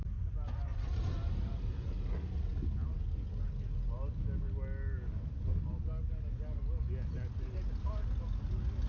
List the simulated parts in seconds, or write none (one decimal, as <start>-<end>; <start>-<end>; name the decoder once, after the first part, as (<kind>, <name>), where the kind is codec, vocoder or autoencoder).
0.7-1.5 (vocoder, BigVGAN v2)